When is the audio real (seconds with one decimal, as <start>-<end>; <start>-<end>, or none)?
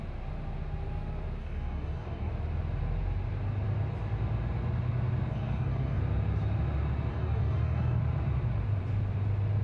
0.0-1.4; 2.3-5.3; 6.0-7.1; 8.0-9.6